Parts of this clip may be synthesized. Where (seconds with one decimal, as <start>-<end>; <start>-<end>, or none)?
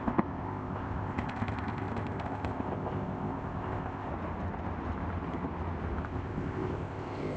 0.0-4.1; 6.0-7.4